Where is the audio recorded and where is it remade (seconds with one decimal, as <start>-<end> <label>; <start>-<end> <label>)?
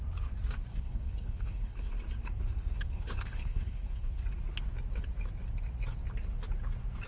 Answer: 0.0-0.7 recorded; 0.7-1.9 remade; 1.9-2.7 recorded; 2.7-4.2 remade; 4.2-7.1 recorded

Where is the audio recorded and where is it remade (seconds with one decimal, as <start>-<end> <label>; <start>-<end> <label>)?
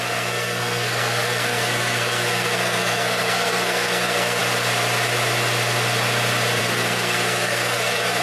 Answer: 0.0-4.4 remade; 4.4-6.6 recorded; 6.6-8.2 remade